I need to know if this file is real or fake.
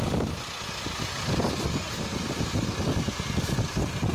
real